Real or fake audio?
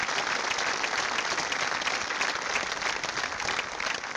real